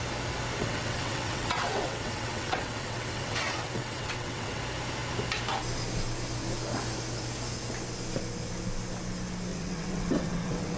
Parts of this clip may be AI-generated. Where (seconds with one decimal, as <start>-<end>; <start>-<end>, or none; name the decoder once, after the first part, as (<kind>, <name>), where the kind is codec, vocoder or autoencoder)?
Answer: 0.6-4.6 (vocoder, WaveNeXt); 9.5-10.8